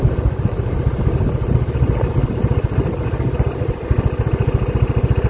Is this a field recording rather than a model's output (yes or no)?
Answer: yes